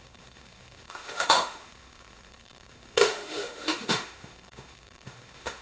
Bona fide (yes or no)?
no